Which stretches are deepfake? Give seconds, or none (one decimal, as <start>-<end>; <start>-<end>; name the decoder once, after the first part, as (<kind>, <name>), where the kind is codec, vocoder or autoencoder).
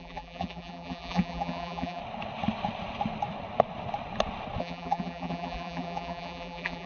0.0-2.0 (vocoder, BigVGAN v2); 4.6-6.9